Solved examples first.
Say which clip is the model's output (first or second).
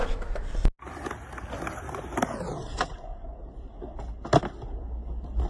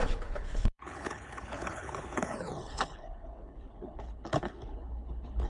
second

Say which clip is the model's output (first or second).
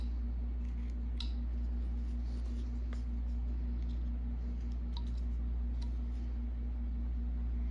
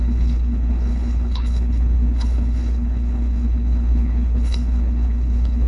second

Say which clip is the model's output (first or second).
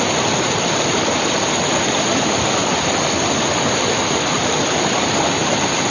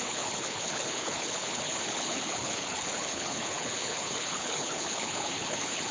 second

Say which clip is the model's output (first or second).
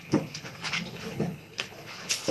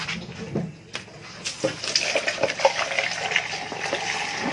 first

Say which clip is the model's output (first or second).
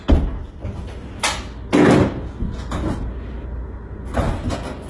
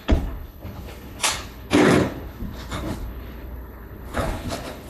second